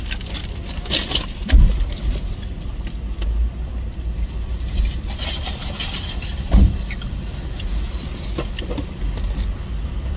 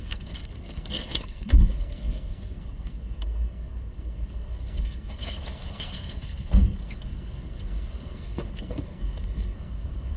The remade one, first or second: second